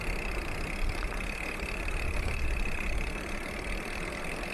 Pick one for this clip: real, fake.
real